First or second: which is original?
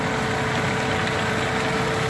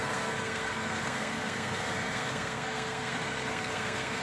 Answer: first